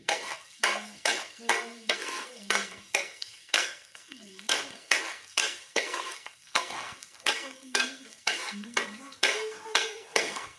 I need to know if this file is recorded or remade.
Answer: remade